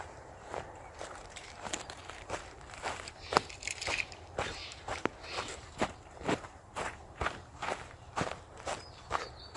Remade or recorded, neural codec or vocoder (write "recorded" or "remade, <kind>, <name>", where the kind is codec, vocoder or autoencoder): remade, vocoder, BigVGAN v2